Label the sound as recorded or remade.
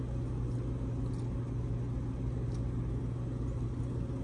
recorded